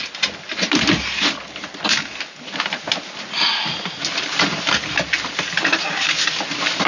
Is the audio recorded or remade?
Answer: recorded